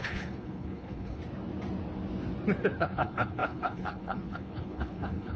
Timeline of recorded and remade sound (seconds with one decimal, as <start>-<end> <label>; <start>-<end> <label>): 0.0-1.2 remade; 1.2-2.8 recorded; 2.8-5.4 remade